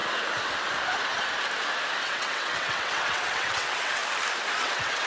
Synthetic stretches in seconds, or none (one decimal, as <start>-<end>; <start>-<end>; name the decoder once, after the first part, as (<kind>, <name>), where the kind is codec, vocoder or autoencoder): 1.9-4.0 (vocoder, WaveNeXt); 4.6-5.1